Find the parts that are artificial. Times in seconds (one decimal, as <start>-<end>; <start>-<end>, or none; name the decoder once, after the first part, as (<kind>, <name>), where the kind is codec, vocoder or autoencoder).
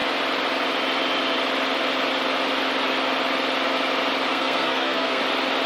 4.3-5.2 (codec, SNAC)